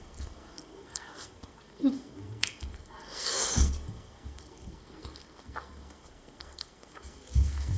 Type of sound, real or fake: fake